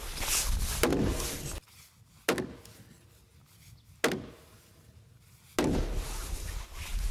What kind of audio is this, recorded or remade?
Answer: recorded